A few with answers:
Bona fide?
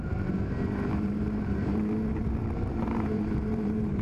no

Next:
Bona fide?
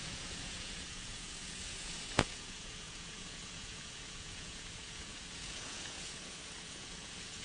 no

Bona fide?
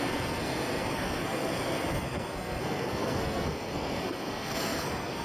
no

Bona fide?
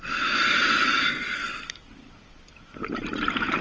yes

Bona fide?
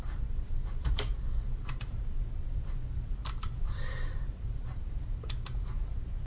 no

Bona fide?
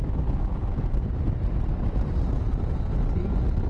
yes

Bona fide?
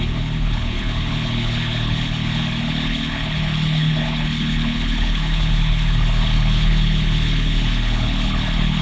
no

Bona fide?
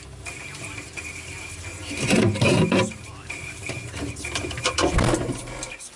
no